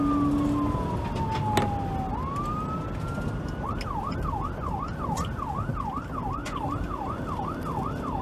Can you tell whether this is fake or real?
real